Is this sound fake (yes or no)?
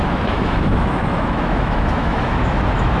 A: yes